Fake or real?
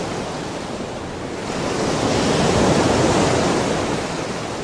real